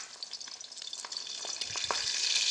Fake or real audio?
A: real